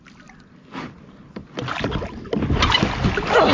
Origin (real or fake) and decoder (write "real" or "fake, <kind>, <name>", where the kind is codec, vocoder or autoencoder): real